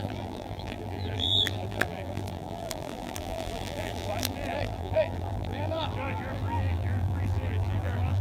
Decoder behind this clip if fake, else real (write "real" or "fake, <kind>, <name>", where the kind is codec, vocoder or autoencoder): fake, vocoder, BigVGAN v2